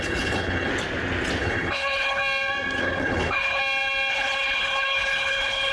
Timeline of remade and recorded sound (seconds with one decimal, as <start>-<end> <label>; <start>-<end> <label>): 0.0-0.7 remade; 0.7-1.4 recorded; 1.4-2.2 remade; 2.2-2.8 recorded; 2.8-3.6 remade; 3.6-4.1 recorded; 4.1-5.7 remade